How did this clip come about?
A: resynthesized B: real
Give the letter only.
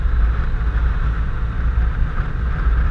B